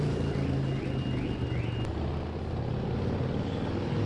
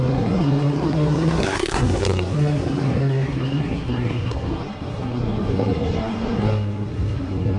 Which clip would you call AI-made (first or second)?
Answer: second